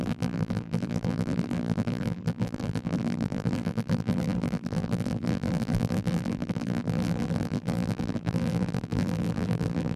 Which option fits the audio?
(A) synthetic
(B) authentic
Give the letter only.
A